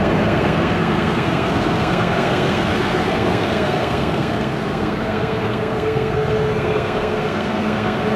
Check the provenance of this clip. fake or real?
fake